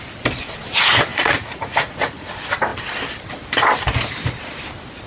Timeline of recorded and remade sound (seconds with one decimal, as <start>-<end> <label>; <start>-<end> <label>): 0.0-1.1 recorded; 1.1-2.3 remade; 2.3-5.1 recorded